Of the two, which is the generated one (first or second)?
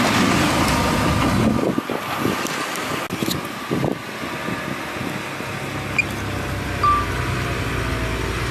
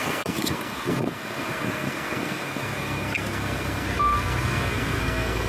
second